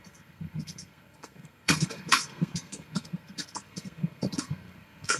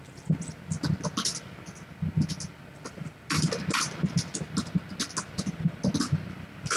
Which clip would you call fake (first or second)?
first